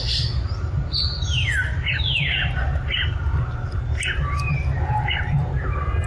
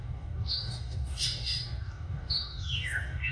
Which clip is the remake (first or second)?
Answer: second